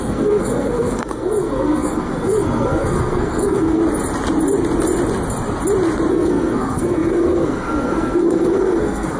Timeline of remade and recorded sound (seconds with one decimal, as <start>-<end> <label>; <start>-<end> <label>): 0.0-3.8 remade; 3.8-6.1 recorded; 6.1-9.2 remade